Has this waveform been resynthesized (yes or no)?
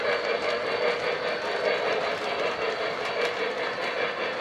no